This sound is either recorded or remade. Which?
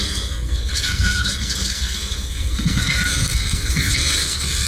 remade